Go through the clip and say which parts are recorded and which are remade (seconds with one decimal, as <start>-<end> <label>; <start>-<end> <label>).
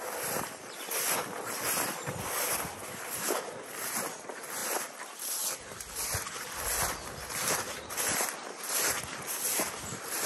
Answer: 0.0-10.3 recorded